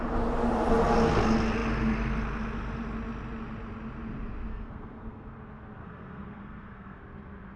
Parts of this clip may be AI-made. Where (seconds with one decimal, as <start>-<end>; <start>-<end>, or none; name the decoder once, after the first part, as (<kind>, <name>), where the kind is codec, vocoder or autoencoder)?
4.5-5.3 (codec, SNAC); 5.8-7.0